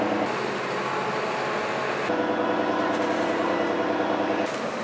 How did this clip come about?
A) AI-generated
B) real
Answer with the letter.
B